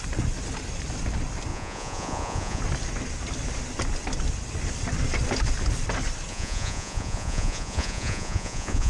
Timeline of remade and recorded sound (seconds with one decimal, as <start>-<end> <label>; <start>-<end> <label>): 0.0-1.5 recorded; 1.5-2.6 remade; 2.6-6.3 recorded; 6.3-8.9 remade